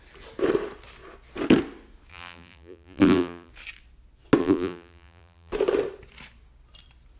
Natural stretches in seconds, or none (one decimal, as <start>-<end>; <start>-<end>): 0.0-2.1; 3.5-4.4; 5.5-7.2